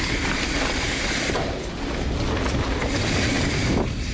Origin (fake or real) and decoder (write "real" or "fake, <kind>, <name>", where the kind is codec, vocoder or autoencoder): real